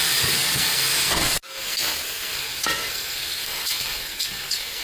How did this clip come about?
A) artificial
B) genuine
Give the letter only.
A